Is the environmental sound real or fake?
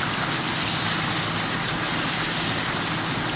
real